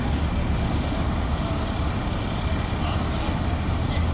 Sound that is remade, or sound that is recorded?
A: recorded